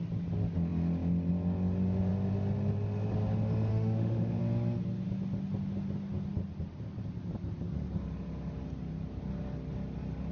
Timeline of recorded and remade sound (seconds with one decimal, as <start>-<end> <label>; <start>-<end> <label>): 0.0-3.7 recorded; 3.7-4.4 remade; 4.4-10.3 recorded